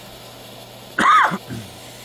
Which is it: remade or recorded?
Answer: recorded